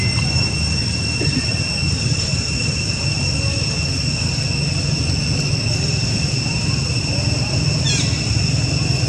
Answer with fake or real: real